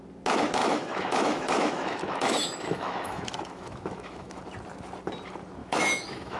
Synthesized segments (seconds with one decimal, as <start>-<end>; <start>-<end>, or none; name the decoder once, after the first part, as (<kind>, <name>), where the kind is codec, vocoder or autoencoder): 0.6-4.4 (autoencoder, DAC-VAE); 5.6-6.4